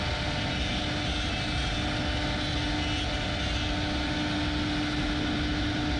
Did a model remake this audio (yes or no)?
no